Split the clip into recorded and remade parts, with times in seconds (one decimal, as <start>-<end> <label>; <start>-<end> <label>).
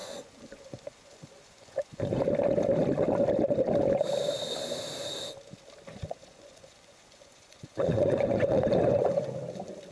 0.0-2.2 remade; 2.2-5.9 recorded; 5.9-9.4 remade; 9.4-9.9 recorded